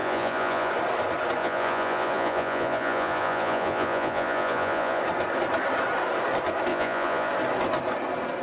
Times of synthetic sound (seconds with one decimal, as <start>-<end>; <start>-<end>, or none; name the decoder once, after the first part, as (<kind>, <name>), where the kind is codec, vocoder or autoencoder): 0.0-0.7 (vocoder, Vocos); 1.4-5.0; 6.7-7.3